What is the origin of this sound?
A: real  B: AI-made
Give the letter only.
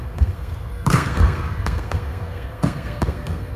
B